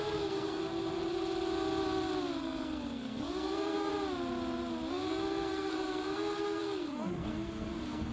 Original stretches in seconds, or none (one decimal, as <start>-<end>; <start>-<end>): 0.6-2.4; 3.9-4.9